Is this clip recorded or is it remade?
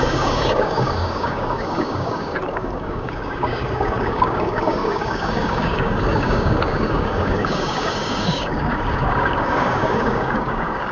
remade